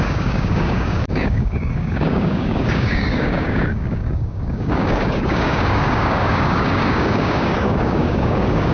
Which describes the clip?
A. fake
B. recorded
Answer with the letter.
A